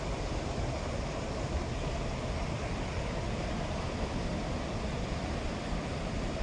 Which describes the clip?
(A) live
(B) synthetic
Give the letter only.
A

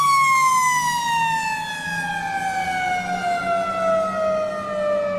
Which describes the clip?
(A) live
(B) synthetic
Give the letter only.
A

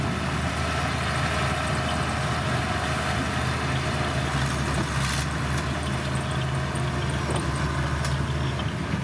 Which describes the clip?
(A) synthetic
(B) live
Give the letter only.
B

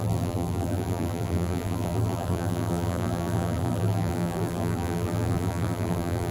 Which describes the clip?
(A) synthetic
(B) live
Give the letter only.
A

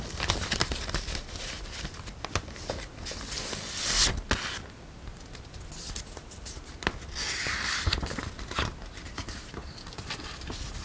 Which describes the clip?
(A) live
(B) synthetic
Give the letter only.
A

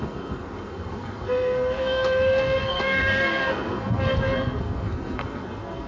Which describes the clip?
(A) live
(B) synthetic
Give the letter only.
B